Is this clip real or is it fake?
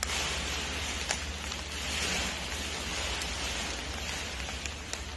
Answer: real